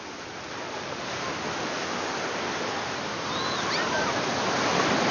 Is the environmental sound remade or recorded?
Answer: recorded